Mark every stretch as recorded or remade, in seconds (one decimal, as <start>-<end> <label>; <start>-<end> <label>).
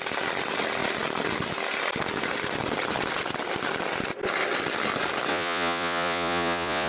0.0-5.3 recorded; 5.3-6.9 remade